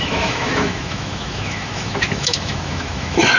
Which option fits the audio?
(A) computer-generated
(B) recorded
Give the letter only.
A